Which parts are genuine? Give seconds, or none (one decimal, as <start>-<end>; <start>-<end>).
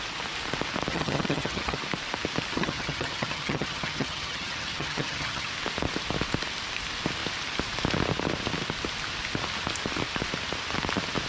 0.0-0.9; 1.8-2.5; 5.5-11.3